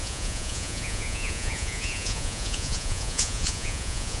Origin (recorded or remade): remade